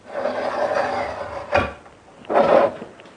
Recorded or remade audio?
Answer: recorded